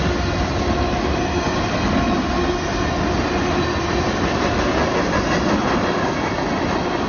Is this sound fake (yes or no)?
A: no